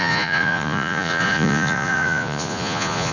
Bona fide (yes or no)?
no